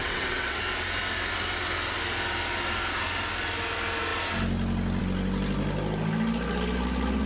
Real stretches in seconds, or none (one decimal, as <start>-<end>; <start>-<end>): 0.6-7.3